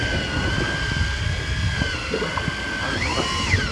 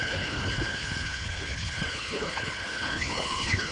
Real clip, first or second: first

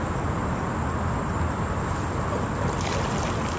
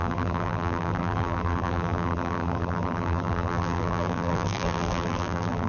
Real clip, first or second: first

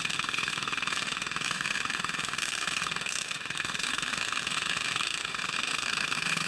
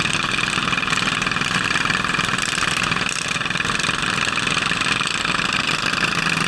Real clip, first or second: second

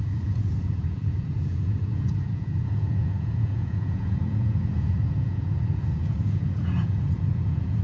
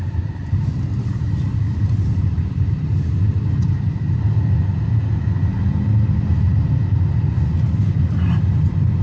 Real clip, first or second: second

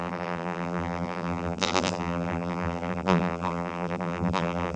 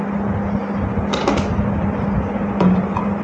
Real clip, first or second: second